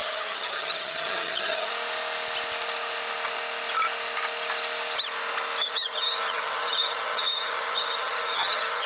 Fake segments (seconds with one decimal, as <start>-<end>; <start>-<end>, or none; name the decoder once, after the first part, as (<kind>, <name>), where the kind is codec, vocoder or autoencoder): 0.0-1.7 (vocoder, HiFi-GAN); 5.6-8.9